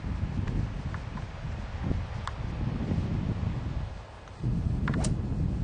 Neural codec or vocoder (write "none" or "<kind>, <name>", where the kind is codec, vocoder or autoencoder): none